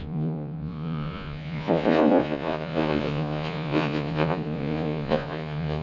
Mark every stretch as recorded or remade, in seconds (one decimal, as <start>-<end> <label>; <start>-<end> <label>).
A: 0.0-5.8 remade